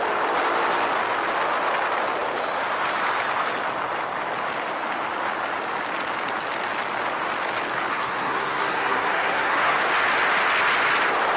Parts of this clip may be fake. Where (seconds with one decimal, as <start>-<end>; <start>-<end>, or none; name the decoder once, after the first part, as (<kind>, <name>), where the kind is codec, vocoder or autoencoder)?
7.9-9.8 (codec, SNAC)